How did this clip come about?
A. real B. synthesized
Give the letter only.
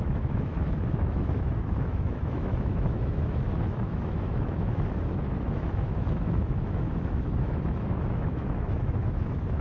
B